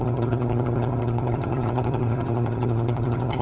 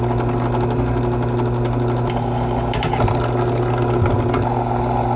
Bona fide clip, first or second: second